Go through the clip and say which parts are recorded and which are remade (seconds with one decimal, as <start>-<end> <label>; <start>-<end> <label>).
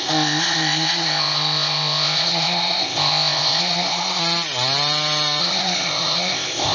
0.0-4.2 remade; 4.2-5.4 recorded; 5.4-6.7 remade